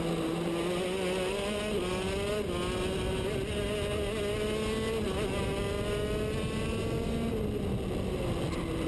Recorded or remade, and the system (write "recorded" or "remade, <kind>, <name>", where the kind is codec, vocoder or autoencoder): recorded